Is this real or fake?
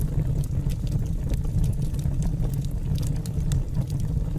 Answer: real